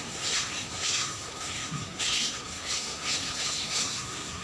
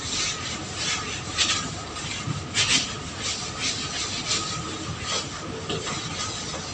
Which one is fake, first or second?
first